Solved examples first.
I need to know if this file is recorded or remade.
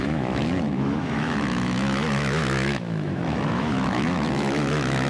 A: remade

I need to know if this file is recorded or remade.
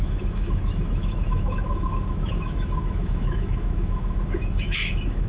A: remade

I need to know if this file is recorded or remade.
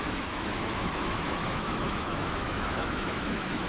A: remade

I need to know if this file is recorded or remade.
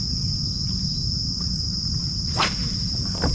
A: recorded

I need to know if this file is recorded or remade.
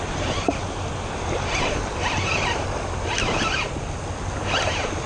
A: recorded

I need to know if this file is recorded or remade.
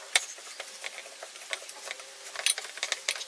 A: recorded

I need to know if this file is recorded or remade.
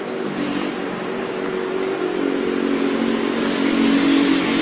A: recorded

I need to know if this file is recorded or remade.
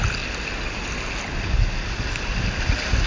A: recorded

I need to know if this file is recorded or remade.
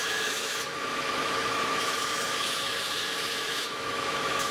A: remade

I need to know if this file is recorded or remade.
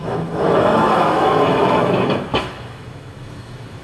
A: remade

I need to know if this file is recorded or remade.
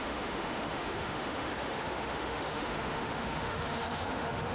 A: remade